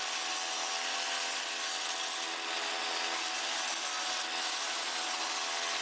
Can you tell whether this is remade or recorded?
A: recorded